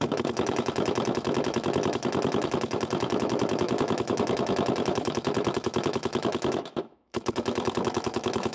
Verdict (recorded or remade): remade